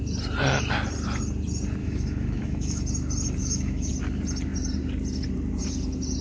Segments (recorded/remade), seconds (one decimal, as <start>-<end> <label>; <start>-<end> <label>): 0.0-1.8 recorded; 1.8-2.8 remade; 2.8-3.4 recorded; 3.4-3.9 remade; 3.9-6.2 recorded